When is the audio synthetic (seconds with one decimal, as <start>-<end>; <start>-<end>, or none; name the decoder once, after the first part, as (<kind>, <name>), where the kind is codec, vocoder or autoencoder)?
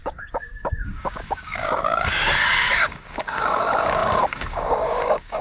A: 0.0-5.4 (codec, DAC)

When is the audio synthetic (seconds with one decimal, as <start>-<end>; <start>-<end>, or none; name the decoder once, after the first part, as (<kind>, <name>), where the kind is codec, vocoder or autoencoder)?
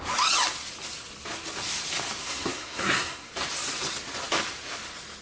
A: 2.2-3.3 (codec, SNAC)